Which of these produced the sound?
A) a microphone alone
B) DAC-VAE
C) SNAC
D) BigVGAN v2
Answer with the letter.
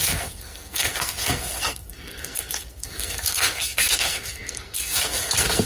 C